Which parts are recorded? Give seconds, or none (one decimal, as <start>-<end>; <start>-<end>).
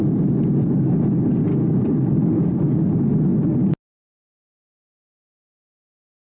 0.0-1.5; 2.6-6.3